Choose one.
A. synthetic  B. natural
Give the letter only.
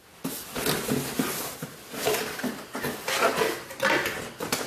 B